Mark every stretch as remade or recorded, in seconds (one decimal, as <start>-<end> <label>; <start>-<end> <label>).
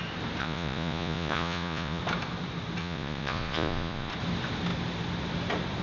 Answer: 0.0-0.4 recorded; 0.4-2.0 remade; 2.0-2.8 recorded; 2.8-4.1 remade; 4.1-5.8 recorded